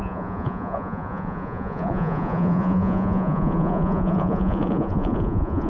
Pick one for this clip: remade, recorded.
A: remade